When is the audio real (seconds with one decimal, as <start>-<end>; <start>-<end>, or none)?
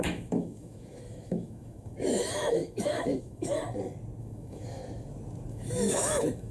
3.6-4.2; 4.8-5.5